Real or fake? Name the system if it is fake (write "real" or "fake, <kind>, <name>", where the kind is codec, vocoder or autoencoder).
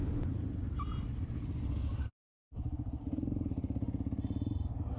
real